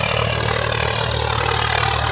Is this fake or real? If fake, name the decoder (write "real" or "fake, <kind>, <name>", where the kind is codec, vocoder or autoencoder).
real